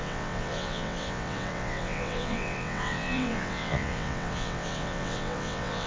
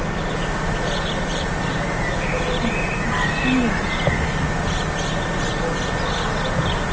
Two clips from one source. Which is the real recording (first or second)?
second